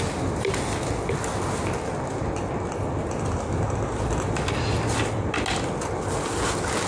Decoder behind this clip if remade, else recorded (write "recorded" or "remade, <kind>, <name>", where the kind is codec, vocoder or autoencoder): recorded